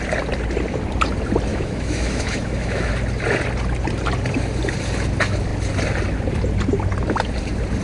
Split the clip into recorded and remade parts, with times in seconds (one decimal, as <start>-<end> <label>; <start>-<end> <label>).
0.0-1.5 recorded; 1.5-2.9 remade; 2.9-7.8 recorded